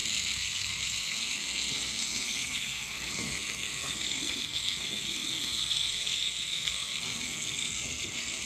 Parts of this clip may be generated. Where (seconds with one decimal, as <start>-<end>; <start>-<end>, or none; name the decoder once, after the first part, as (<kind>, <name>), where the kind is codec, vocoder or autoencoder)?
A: 0.0-8.5 (codec, SNAC)